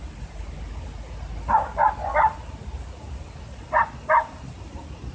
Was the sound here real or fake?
real